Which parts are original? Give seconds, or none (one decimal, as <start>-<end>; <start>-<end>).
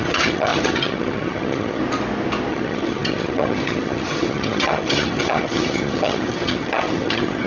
1.8-2.5